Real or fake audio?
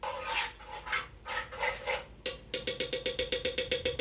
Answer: real